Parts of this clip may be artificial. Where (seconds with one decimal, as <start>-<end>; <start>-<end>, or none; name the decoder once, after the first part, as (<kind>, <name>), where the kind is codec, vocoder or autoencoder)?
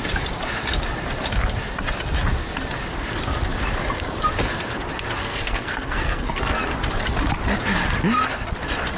5.2-6.6 (codec, SNAC)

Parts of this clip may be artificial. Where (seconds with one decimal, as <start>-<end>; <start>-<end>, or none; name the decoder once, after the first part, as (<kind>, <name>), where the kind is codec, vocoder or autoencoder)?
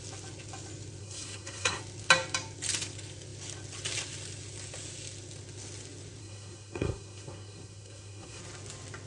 1.0-1.8 (codec, SNAC); 6.2-8.4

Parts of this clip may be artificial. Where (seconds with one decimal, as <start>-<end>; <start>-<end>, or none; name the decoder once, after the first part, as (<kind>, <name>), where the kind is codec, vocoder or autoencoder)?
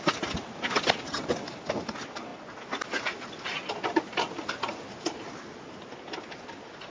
none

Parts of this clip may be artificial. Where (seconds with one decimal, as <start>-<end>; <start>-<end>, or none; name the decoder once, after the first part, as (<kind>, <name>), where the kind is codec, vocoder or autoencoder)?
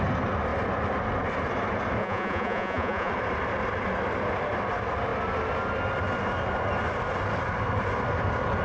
2.0-3.1 (vocoder, Vocos)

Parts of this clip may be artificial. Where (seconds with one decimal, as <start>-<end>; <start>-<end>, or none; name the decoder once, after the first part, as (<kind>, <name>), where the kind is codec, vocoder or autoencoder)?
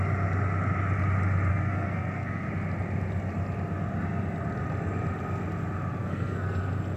1.5-2.5 (codec, SNAC); 6.0-6.6